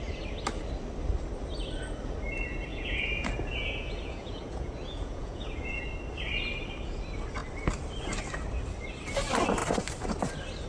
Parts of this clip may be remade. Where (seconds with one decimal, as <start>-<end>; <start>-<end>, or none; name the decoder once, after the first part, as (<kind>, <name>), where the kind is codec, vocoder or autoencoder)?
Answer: 2.7-5.8 (vocoder, Vocos)